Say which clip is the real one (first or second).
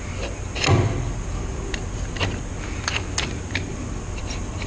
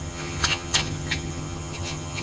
first